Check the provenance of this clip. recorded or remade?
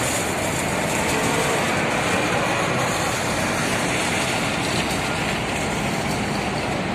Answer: recorded